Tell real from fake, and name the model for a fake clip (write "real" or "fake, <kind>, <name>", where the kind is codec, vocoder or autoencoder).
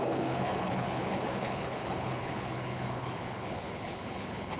fake, codec, HILCodec